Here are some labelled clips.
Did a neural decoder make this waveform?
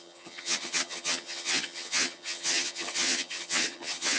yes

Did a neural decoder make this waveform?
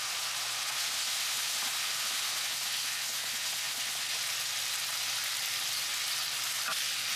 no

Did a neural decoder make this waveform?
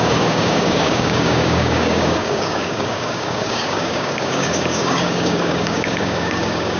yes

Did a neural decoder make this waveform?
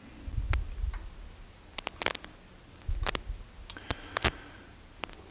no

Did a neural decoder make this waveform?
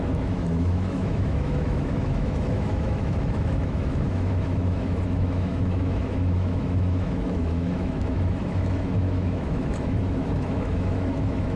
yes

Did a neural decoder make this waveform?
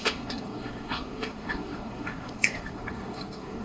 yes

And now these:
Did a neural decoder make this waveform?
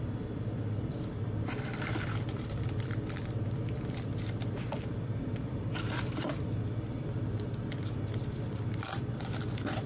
yes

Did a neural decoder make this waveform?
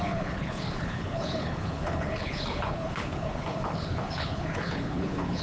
yes